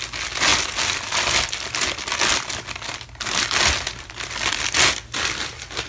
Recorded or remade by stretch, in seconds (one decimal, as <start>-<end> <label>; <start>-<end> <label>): 0.0-5.9 recorded